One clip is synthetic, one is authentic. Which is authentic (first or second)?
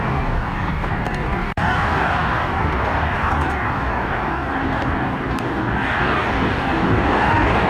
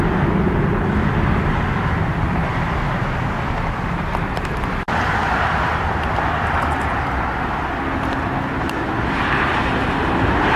second